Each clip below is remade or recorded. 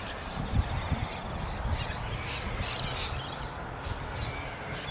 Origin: recorded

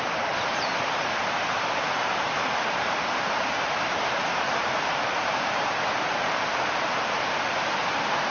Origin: remade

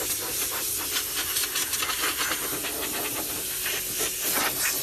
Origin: recorded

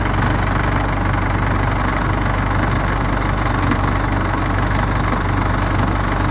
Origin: recorded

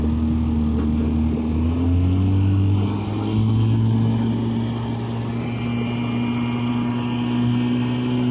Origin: recorded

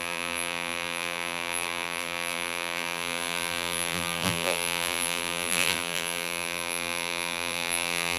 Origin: remade